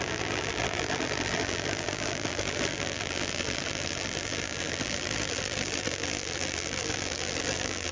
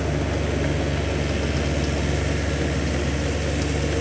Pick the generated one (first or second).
first